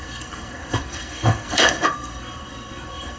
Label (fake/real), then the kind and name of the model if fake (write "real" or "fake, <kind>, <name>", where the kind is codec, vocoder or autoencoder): fake, codec, SNAC